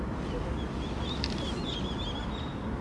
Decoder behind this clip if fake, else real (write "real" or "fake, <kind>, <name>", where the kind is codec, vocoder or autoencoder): real